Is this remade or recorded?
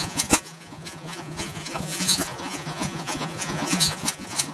remade